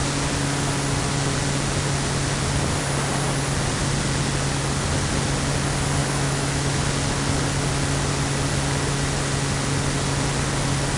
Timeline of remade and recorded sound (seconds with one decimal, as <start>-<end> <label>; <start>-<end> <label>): 0.0-6.0 recorded; 6.0-6.8 remade; 6.8-11.0 recorded